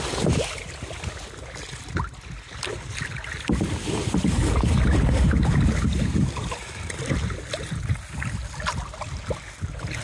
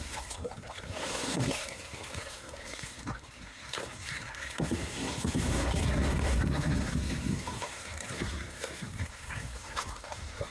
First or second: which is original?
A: first